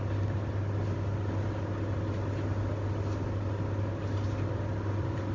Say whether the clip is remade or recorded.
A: recorded